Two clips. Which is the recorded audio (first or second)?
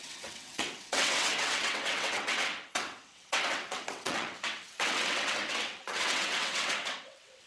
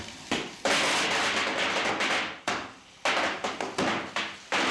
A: second